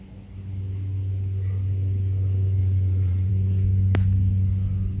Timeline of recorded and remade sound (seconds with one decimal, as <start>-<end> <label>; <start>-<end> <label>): 0.0-2.6 recorded; 2.6-3.3 remade; 3.3-5.0 recorded